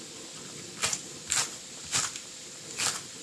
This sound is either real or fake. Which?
real